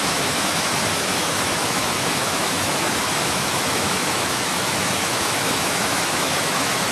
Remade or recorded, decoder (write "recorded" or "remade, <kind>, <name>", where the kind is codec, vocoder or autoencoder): remade, autoencoder, DAC-VAE